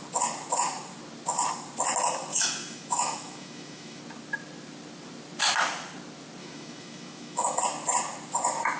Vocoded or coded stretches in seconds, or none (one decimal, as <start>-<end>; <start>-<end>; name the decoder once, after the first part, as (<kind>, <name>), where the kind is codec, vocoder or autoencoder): 2.3-4.0 (autoencoder, DAC-VAE); 6.4-7.6